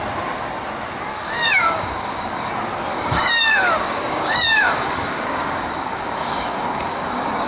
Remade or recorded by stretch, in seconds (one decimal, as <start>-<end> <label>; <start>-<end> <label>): 0.0-1.1 recorded; 1.1-2.5 remade; 2.5-2.9 recorded; 2.9-7.5 remade